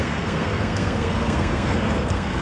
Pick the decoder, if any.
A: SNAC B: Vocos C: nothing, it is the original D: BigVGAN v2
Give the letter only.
A